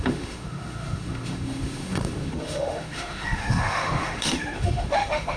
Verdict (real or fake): fake